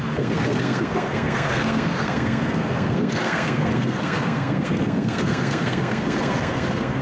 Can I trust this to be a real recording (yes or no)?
no